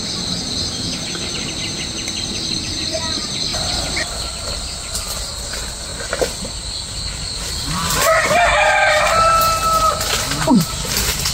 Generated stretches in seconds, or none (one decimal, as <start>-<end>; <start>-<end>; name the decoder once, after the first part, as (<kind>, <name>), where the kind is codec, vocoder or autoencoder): 0.0-11.3 (vocoder, BigVGAN v2)